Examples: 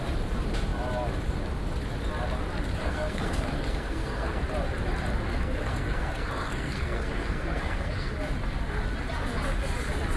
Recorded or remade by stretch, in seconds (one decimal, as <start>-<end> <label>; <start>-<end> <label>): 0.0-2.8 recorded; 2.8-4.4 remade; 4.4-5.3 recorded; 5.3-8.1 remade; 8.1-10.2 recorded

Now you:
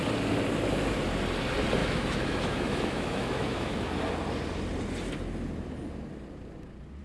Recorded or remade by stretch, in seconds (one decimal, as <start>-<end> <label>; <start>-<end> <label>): 0.0-1.8 recorded; 1.8-3.9 remade; 3.9-7.0 recorded

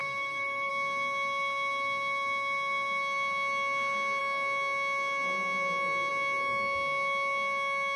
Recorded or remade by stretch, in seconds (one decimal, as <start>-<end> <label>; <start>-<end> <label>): 0.0-0.7 remade; 0.7-8.0 recorded

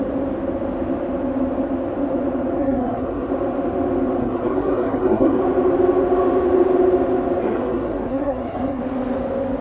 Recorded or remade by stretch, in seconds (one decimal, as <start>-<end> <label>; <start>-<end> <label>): 0.0-2.6 recorded; 2.6-3.3 remade; 3.3-4.2 recorded; 4.2-5.4 remade; 5.4-7.4 recorded; 7.4-8.8 remade; 8.8-9.6 recorded

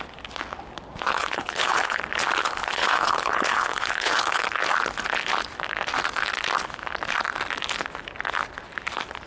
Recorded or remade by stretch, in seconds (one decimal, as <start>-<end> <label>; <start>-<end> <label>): 0.0-1.1 recorded; 1.1-2.0 remade; 2.0-2.4 recorded; 2.4-4.4 remade; 4.4-9.3 recorded

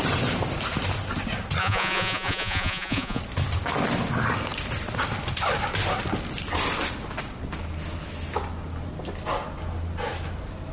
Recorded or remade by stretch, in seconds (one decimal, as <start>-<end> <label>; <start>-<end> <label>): 0.0-1.6 recorded; 1.6-3.2 remade; 3.2-10.7 recorded